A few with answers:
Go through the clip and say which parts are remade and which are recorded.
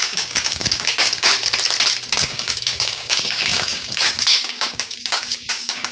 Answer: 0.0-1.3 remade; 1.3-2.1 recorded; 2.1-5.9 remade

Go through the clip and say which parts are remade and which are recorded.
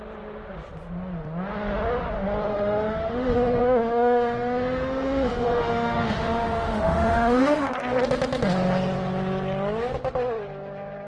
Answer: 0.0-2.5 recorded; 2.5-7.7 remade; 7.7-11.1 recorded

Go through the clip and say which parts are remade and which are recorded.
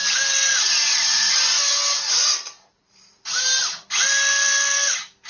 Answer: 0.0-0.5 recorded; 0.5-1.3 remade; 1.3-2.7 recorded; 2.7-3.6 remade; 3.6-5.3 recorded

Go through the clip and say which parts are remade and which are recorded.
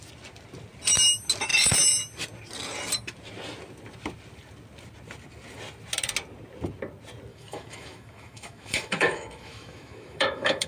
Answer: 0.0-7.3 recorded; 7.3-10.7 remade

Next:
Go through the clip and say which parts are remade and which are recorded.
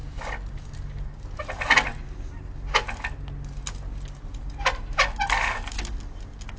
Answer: 0.0-6.6 recorded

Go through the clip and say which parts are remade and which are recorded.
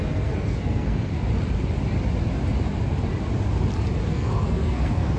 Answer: 0.0-1.1 remade; 1.1-4.1 recorded; 4.1-5.2 remade